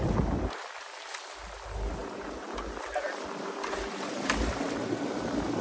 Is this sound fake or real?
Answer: real